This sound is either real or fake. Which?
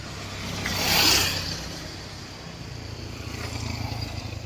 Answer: real